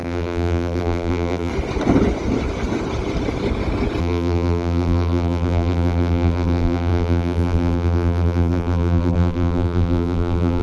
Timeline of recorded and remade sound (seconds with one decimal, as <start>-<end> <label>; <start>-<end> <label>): 0.0-1.5 remade; 1.5-4.0 recorded; 4.0-10.6 remade

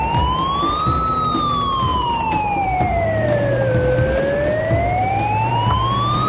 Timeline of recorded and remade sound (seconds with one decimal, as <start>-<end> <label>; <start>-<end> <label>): 0.0-1.9 recorded; 1.9-3.7 remade; 3.7-5.0 recorded; 5.0-5.5 remade; 5.5-6.3 recorded